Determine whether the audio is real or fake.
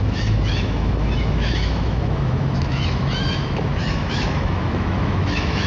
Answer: fake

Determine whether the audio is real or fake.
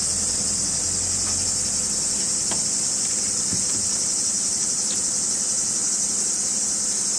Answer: real